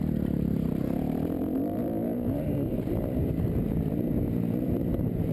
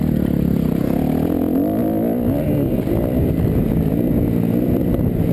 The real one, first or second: second